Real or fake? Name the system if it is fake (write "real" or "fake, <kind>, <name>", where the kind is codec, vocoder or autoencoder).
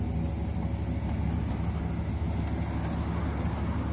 real